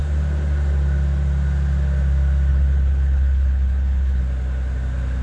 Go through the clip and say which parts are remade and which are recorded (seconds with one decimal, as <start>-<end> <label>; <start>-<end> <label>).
0.0-2.5 recorded; 2.5-4.2 remade; 4.2-5.2 recorded